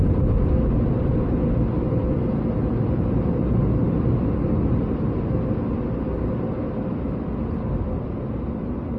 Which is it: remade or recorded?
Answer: recorded